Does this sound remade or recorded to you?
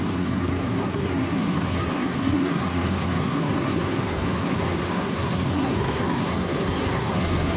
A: remade